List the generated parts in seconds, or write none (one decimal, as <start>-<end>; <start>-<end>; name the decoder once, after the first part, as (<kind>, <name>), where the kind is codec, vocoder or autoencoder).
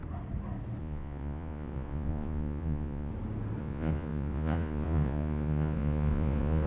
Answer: 0.8-3.1 (vocoder, Vocos); 3.6-6.7